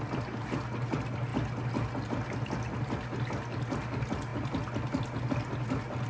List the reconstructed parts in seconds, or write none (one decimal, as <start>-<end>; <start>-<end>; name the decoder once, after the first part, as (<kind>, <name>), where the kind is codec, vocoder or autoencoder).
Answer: none